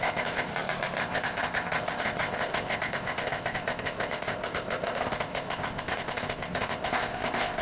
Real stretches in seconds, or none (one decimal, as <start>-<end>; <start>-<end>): 0.5-1.0

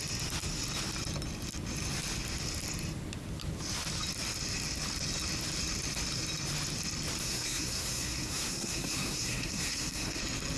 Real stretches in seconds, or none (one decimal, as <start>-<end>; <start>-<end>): 0.0-7.2; 10.2-10.6

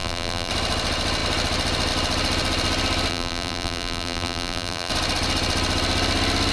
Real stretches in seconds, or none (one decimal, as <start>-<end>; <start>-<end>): 0.5-3.1; 4.9-6.5

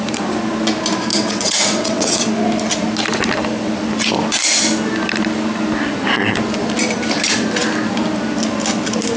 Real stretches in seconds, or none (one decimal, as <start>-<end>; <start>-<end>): 0.0-1.1; 2.3-9.2

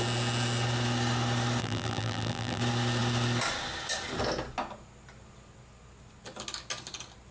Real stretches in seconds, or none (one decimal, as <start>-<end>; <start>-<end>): 0.0-1.6; 2.6-7.3